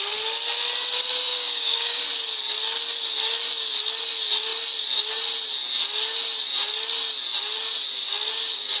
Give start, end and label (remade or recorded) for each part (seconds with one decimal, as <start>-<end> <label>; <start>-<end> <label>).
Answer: 0.0-1.3 recorded; 1.3-2.0 remade; 2.0-8.8 recorded